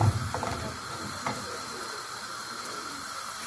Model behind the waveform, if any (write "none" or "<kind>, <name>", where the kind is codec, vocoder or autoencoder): vocoder, BigVGAN v2